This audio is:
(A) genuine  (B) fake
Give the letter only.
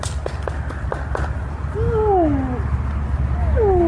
A